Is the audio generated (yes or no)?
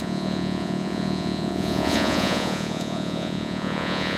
yes